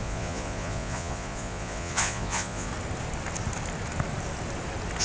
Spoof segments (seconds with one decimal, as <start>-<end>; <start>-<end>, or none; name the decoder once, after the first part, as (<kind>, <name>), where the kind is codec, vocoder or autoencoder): 0.0-2.7 (vocoder, Vocos)